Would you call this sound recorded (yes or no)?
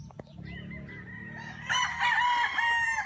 yes